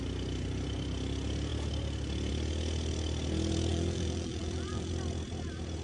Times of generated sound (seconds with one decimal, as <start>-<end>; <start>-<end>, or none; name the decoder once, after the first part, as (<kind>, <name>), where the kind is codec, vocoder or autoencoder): 3.7-4.9 (vocoder, BigVGAN v2)